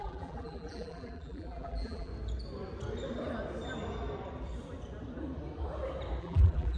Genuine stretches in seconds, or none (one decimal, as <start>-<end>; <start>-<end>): 2.1-6.2